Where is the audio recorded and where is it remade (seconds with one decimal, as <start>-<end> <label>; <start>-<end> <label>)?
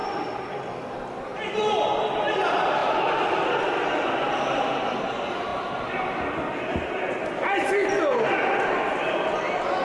0.0-9.8 recorded